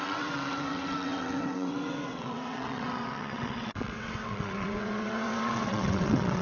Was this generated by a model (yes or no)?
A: yes